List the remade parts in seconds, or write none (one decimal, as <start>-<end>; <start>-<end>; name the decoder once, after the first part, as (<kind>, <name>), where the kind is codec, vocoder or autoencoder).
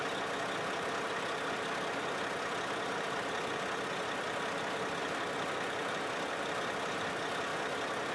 7.5-8.1 (vocoder, BigVGAN v2)